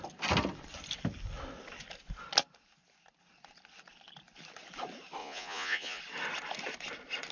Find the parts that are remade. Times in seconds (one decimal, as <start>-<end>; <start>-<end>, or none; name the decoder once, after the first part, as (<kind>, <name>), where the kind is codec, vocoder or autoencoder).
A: 5.2-6.0 (vocoder, Vocos)